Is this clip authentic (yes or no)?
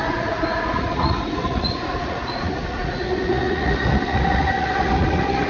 no